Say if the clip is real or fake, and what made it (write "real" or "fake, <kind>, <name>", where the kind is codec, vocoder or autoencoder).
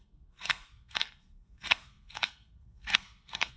fake, codec, SNAC